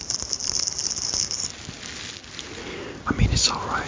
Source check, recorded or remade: recorded